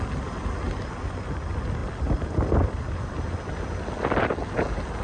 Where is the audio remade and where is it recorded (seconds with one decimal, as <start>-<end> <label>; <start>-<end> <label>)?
0.0-5.0 recorded